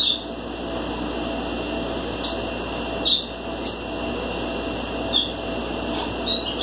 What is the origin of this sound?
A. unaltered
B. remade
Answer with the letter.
A